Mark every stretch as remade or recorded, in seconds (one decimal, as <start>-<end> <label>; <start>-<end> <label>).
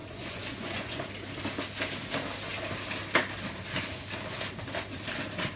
0.0-1.0 remade; 1.0-5.6 recorded